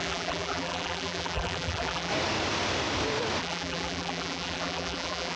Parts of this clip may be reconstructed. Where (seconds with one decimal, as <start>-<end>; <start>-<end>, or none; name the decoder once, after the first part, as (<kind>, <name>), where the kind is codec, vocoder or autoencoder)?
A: 0.0-2.1 (vocoder, BigVGAN v2); 3.4-5.4

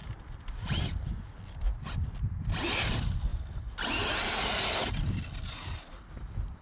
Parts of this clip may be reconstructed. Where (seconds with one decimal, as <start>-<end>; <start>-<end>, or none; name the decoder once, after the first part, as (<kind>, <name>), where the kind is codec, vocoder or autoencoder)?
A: none

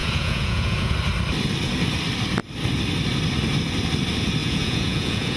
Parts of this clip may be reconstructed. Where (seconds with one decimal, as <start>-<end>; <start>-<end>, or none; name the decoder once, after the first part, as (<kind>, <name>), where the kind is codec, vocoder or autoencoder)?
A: 0.0-0.9 (vocoder, Vocos); 4.4-5.4

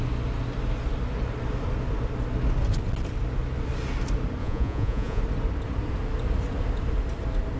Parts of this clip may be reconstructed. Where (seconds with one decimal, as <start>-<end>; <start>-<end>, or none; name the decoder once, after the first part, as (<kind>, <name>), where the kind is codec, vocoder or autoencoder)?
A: 4.4-5.2 (vocoder, Vocos)

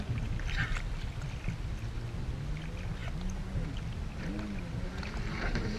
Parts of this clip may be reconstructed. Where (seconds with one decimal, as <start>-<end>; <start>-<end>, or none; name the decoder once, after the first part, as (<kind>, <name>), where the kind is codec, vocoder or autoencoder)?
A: none

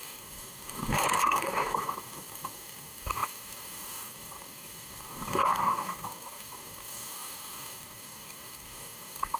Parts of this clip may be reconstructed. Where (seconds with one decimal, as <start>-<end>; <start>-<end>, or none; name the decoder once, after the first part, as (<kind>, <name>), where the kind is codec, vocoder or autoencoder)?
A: 0.0-9.4 (codec, DAC)

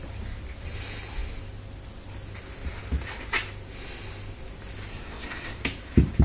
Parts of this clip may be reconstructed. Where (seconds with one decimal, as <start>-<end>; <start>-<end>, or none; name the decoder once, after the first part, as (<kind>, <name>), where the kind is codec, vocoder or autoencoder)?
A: 4.9-5.6 (codec, SNAC)